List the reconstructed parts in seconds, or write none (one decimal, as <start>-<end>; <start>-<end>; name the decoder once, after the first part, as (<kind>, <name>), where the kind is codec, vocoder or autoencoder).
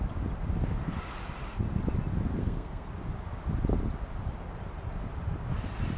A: 2.4-2.9 (codec, SNAC)